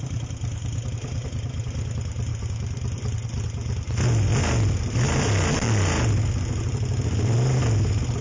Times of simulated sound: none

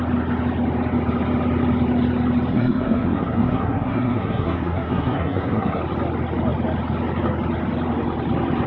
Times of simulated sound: 2.5-5.8 (codec, SNAC)

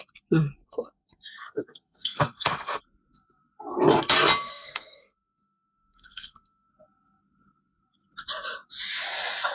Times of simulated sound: 0.6-2.8 (codec, SNAC); 4.5-6.7

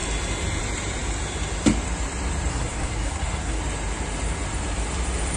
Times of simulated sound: 2.5-3.6 (codec, SNAC)

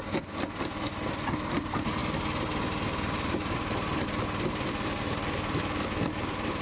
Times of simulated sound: none

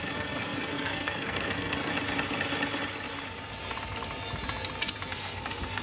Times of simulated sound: 0.0-1.9 (codec, SNAC); 5.1-5.8

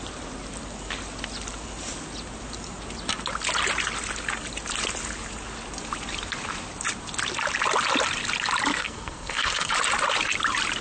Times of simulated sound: 8.7-9.7 (codec, SNAC)